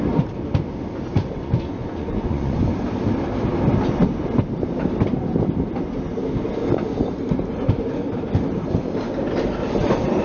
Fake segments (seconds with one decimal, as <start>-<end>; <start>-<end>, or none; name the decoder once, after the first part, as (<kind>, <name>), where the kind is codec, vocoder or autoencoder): 1.1-2.6 (vocoder, Vocos)